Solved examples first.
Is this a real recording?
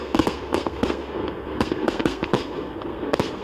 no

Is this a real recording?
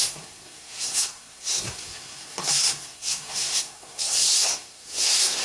no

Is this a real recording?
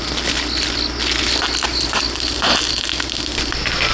yes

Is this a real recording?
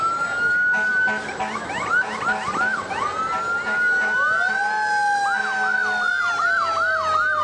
yes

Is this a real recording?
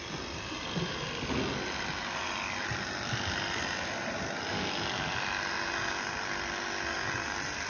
yes